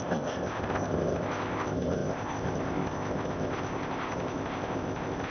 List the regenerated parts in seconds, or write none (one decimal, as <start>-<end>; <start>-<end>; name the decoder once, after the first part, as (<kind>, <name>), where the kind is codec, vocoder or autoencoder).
0.0-5.3 (codec, ZipCodec)